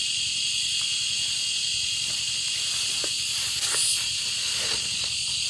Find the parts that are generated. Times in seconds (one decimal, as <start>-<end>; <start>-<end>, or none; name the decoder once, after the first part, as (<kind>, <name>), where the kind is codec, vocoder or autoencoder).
0.9-4.2 (vocoder, BigVGAN v2)